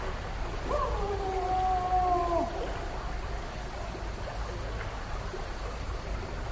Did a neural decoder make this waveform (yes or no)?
no